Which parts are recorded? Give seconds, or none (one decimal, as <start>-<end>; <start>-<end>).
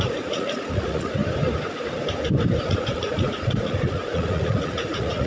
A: 1.2-2.6